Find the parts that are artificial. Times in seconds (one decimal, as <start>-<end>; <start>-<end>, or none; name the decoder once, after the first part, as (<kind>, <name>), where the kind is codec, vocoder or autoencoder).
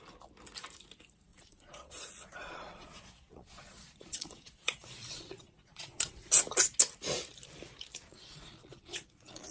1.3-6.3 (vocoder, Vocos); 8.1-9.5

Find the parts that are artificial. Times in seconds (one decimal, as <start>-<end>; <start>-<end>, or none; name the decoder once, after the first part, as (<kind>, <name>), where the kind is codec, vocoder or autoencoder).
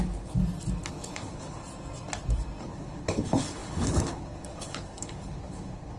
0.0-0.4 (codec, HILCodec); 0.9-1.6; 2.6-6.0